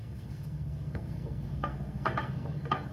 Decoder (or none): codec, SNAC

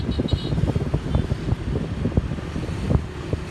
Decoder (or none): none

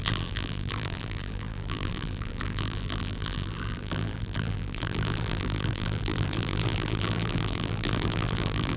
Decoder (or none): vocoder, BigVGAN v2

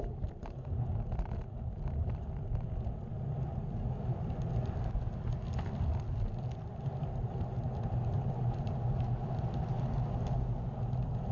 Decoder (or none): none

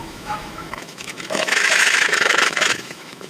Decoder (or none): autoencoder, DAC-VAE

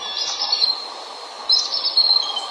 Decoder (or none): none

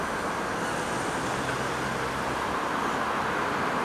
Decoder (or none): none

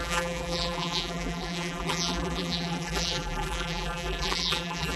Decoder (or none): vocoder, BigVGAN v2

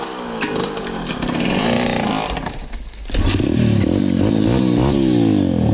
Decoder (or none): none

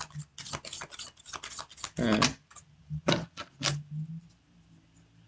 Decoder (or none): none